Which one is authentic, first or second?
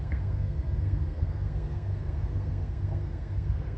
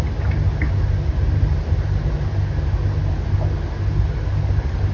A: second